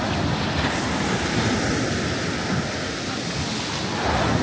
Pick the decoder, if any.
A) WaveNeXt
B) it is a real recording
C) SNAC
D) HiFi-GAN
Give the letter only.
B